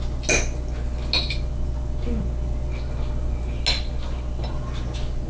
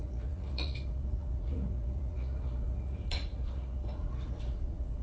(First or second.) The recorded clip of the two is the first